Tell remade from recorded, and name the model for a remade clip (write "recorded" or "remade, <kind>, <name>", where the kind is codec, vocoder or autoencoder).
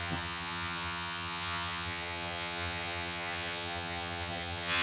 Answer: remade, vocoder, HiFi-GAN